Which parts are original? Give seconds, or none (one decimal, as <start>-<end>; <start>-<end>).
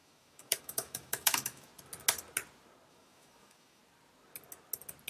1.7-2.9; 3.8-5.1